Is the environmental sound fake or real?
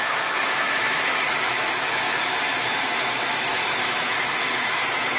fake